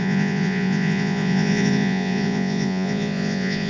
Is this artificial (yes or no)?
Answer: yes